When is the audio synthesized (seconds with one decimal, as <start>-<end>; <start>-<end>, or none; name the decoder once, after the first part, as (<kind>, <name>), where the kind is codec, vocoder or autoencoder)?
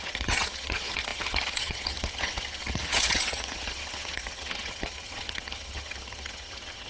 0.0-6.9 (vocoder, HiFi-GAN)